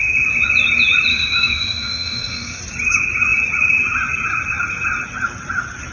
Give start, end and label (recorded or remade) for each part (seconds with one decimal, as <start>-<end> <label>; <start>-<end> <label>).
0.0-1.1 recorded; 1.1-2.6 remade; 2.6-5.9 recorded